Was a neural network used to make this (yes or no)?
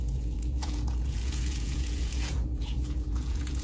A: yes